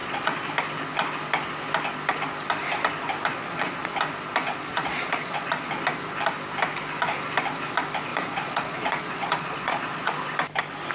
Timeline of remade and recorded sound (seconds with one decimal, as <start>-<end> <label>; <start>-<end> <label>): 0.0-0.5 remade; 0.5-3.3 recorded; 3.3-3.9 remade; 3.9-4.4 recorded; 4.4-5.7 remade; 5.7-8.1 recorded; 8.1-10.1 remade; 10.1-10.9 recorded